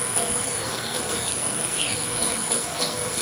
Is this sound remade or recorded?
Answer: remade